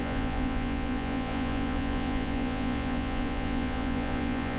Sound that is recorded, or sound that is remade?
remade